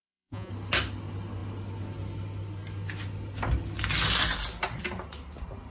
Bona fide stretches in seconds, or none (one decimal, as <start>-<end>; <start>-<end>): 0.5-5.7